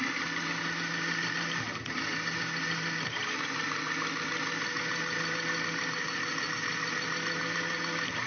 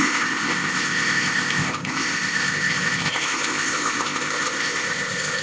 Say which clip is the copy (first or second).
second